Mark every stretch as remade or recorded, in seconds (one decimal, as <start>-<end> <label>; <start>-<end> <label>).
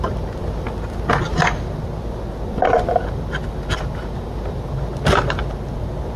0.0-6.2 recorded